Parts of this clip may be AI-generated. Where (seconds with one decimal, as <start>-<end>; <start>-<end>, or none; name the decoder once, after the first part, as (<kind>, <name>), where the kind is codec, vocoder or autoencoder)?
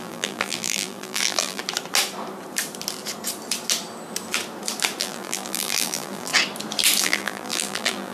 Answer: 0.0-1.6 (vocoder, BigVGAN v2); 5.0-6.3; 7.0-8.1